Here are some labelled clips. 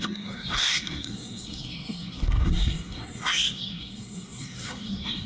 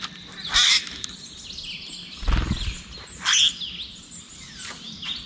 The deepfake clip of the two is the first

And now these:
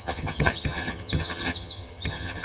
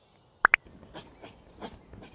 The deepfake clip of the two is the first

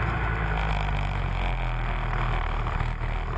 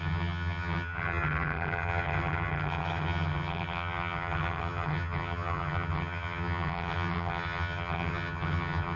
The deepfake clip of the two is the second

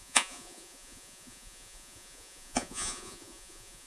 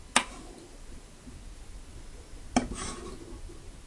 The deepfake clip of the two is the first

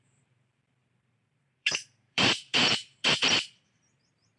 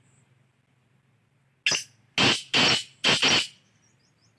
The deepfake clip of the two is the first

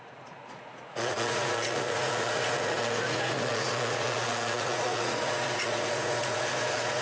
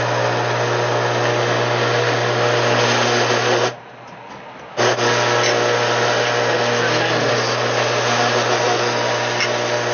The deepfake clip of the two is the first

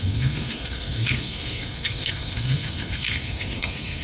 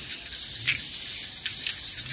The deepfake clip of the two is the first